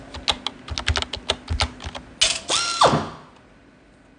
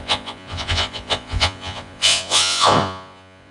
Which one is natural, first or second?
first